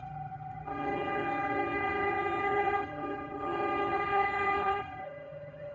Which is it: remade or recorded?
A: remade